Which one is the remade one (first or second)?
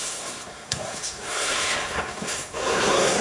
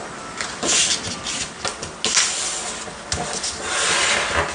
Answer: first